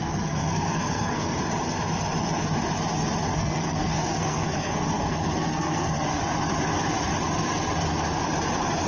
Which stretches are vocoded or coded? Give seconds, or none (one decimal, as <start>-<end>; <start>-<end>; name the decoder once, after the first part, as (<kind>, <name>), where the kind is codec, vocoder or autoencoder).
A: 0.0-1.4 (codec, SNAC); 3.3-6.2